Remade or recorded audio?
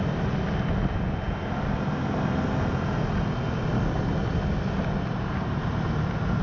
recorded